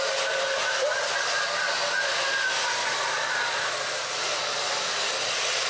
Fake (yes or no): no